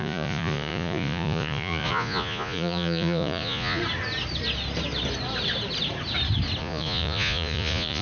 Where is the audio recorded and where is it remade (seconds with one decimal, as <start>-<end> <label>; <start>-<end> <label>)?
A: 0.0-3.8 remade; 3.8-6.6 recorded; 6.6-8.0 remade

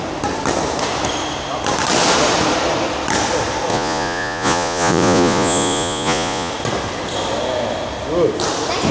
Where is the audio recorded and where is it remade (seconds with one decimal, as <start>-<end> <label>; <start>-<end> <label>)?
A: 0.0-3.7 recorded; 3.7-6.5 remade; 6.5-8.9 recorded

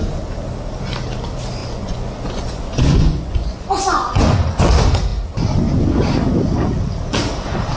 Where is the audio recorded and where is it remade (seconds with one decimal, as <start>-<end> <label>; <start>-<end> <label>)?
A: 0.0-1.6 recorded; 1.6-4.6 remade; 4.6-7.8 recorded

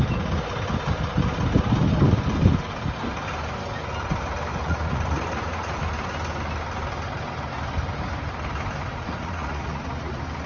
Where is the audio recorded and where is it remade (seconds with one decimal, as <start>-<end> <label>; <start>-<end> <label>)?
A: 0.0-4.5 recorded; 4.5-5.8 remade; 5.8-8.9 recorded; 8.9-10.1 remade; 10.1-10.5 recorded

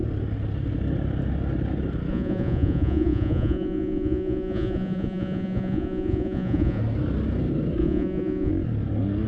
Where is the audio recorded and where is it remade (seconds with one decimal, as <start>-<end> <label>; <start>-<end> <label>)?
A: 0.0-2.1 recorded; 2.1-6.8 remade; 6.8-7.8 recorded; 7.8-8.5 remade; 8.5-9.3 recorded

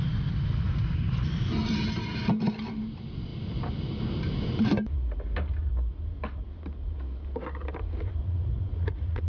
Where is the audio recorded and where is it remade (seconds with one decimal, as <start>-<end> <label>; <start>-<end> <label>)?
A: 0.0-8.2 recorded; 8.2-9.3 remade

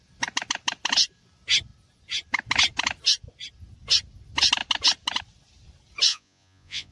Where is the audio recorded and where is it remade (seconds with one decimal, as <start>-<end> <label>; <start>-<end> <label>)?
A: 0.0-6.1 recorded; 6.1-6.9 remade

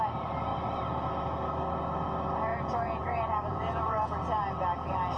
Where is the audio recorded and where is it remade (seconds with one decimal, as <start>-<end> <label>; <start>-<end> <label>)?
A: 0.0-2.5 recorded; 2.5-4.1 remade; 4.1-5.2 recorded